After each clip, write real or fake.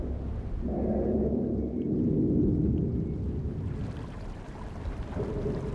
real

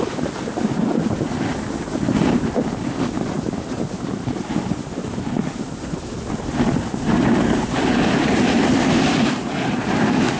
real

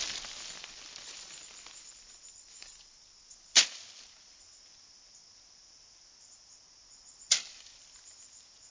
real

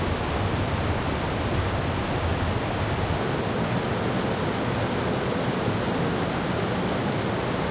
real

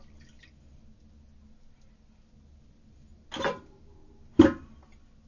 real